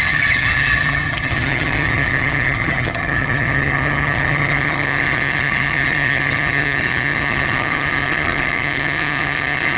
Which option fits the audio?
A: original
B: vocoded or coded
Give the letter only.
B